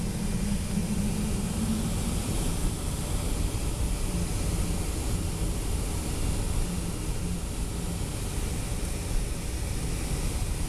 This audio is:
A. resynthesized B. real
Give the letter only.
B